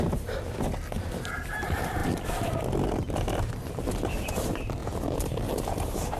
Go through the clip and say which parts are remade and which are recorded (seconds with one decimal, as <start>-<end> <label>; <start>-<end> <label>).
0.0-4.8 remade; 4.8-5.7 recorded; 5.7-6.2 remade